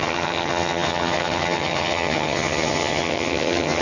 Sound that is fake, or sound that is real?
fake